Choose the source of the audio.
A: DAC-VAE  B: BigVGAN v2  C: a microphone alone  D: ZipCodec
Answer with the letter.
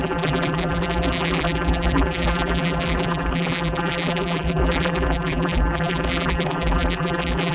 B